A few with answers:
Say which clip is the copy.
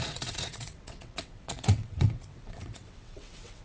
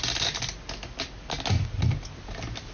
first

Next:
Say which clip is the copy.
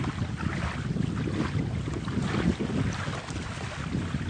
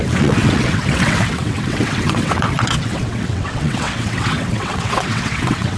second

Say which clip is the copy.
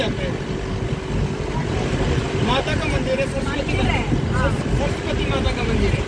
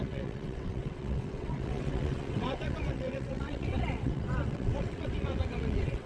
second